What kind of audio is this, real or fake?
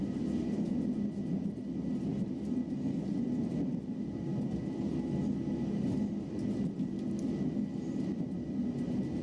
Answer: real